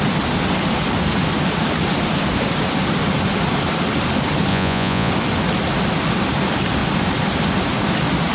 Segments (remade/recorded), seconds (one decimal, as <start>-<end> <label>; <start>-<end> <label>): 0.0-4.5 recorded; 4.5-5.1 remade; 5.1-8.3 recorded